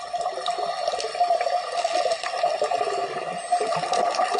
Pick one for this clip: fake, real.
real